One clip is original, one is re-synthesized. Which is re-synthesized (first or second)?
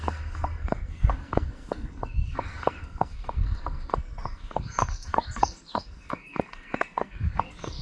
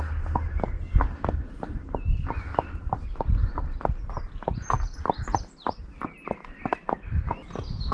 first